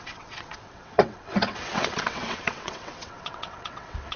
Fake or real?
fake